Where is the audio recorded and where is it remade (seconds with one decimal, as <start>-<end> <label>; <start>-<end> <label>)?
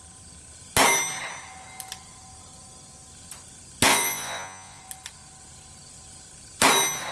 0.0-3.9 recorded; 3.9-4.8 remade; 4.8-7.1 recorded